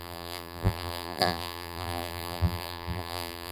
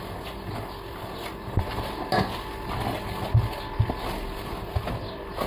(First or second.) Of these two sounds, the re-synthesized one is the first